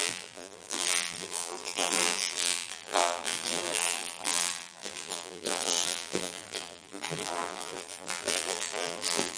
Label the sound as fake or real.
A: fake